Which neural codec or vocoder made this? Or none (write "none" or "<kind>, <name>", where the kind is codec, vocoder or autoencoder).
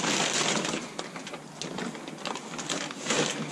none